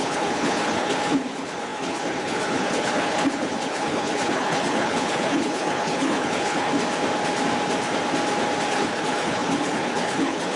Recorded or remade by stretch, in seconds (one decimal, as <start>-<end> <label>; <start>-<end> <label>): 0.0-6.7 remade; 6.7-8.7 recorded; 8.7-10.6 remade